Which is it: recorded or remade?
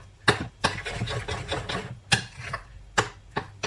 recorded